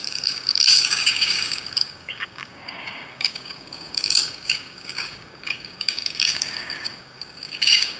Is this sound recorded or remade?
remade